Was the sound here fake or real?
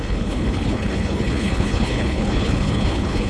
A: fake